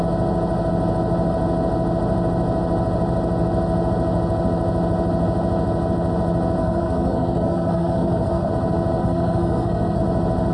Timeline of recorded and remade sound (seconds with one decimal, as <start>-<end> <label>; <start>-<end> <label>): 0.0-6.6 recorded; 6.6-8.5 remade; 8.5-9.0 recorded; 9.0-10.0 remade; 10.0-10.5 recorded